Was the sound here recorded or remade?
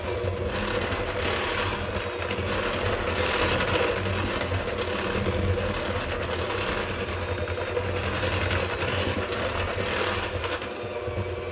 recorded